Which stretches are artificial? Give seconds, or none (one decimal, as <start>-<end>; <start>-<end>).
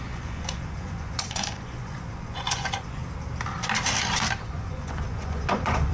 0.0-3.0; 4.4-5.9